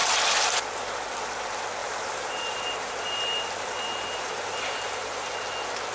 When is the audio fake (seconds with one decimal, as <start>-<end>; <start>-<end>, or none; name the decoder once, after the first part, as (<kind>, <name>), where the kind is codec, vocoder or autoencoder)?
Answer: 1.8-5.3 (vocoder, BigVGAN v2)